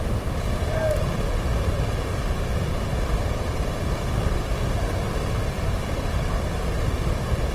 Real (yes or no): no